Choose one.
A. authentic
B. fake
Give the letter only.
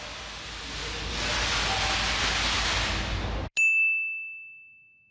A